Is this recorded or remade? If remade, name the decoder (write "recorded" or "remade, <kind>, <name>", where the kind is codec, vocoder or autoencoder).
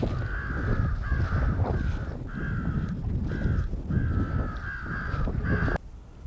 recorded